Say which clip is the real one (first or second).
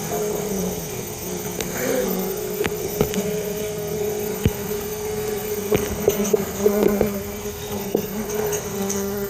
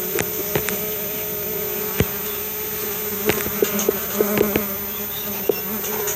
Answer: second